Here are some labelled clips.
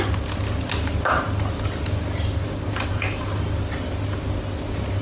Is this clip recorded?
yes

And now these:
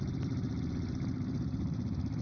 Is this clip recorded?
no